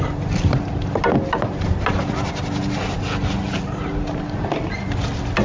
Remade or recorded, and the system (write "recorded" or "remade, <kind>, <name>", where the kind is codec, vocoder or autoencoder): recorded